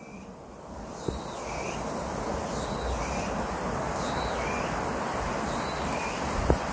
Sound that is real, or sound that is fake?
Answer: real